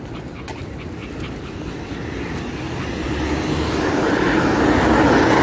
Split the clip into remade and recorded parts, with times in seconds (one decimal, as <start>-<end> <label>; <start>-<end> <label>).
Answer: 0.0-5.4 recorded